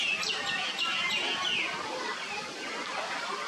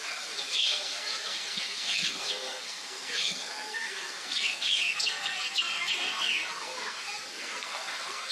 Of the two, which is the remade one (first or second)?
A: second